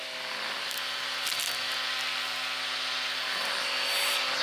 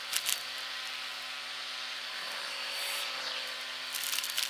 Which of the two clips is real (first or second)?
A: first